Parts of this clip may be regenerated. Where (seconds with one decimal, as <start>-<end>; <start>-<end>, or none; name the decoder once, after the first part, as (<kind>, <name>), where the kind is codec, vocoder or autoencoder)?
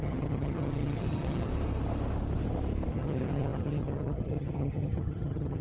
0.0-1.5 (vocoder, HiFi-GAN); 2.9-5.6